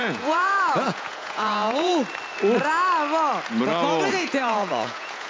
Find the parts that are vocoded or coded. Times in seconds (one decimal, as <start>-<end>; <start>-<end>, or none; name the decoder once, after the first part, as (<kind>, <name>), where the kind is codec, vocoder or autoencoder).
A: 0.0-1.9 (vocoder, Vocos); 4.1-5.3